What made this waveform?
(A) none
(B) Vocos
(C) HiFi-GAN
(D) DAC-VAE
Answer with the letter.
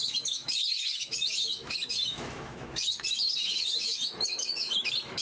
D